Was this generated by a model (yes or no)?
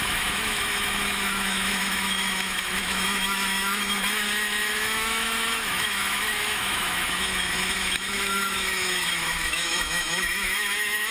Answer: yes